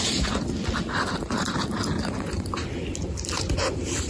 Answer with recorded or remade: recorded